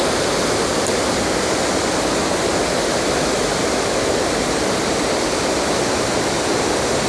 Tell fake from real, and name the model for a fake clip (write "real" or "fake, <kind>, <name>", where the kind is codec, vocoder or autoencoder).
real